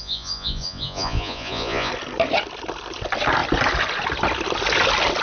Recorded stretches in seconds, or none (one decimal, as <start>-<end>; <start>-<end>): 1.9-5.2